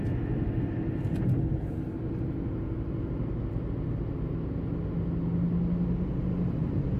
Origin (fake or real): real